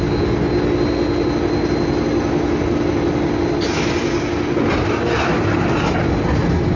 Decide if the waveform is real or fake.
real